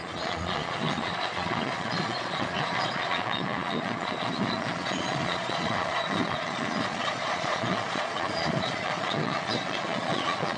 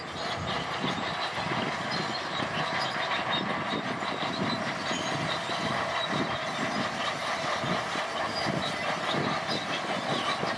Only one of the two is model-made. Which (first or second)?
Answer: first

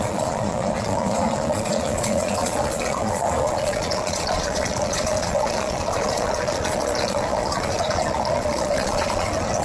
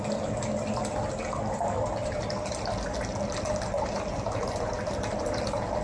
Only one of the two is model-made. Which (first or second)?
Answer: first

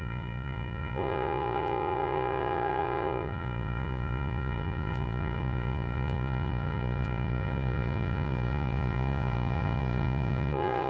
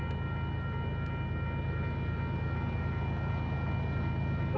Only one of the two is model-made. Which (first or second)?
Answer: first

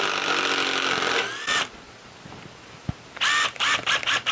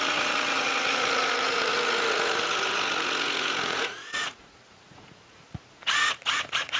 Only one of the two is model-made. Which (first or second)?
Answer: second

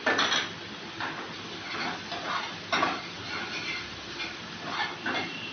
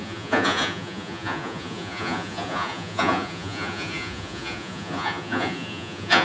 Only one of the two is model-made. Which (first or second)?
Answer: second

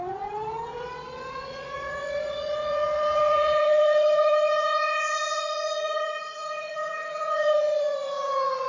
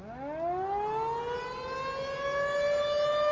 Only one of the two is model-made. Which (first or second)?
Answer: first